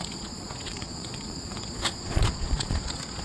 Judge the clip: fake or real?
fake